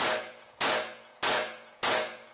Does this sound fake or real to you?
fake